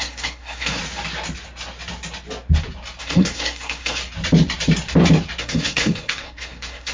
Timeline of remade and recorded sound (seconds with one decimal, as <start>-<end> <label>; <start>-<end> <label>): 0.0-0.8 remade; 0.8-3.0 recorded; 3.0-4.0 remade; 4.0-5.4 recorded; 5.4-6.9 remade